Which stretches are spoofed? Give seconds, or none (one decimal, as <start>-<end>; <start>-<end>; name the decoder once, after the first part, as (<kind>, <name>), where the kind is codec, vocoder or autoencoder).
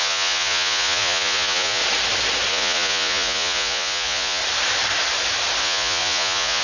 0.0-1.8 (vocoder, Vocos); 2.5-4.4; 5.6-6.6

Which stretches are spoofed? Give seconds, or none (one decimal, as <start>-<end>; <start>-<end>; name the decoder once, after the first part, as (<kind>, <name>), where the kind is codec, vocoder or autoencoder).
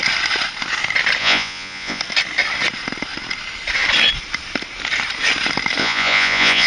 1.2-2.0 (vocoder, Vocos); 5.8-6.7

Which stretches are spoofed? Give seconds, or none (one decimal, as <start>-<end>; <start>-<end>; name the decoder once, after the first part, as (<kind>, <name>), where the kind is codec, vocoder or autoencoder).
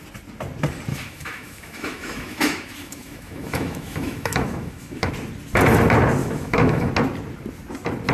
0.9-5.1 (autoencoder, DAC-VAE); 6.2-6.9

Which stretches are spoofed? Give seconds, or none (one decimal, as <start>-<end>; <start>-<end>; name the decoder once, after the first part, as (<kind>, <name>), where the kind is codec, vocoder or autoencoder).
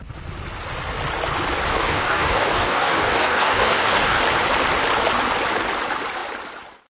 1.7-4.2 (codec, DAC)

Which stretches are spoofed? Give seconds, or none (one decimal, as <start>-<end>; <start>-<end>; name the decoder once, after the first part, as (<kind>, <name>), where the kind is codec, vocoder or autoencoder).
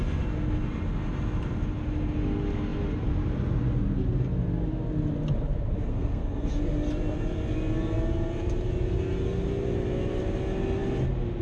5.9-6.6 (codec, SNAC)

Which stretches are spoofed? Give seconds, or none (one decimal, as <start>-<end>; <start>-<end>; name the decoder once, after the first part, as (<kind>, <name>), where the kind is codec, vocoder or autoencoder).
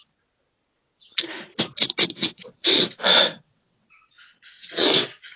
2.0-5.4 (vocoder, WaveNeXt)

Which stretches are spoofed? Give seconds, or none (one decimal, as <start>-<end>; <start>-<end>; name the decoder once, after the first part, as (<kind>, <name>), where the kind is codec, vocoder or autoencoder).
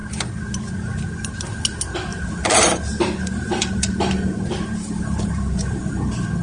2.1-5.9 (vocoder, BigVGAN v2)